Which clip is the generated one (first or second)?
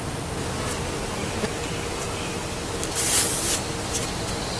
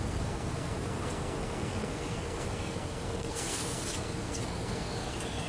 second